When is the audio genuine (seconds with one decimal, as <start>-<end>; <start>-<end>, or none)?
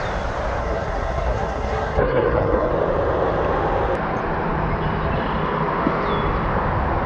0.0-0.6; 2.7-7.1